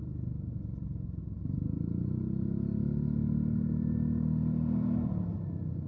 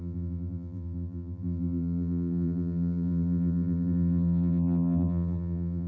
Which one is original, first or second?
first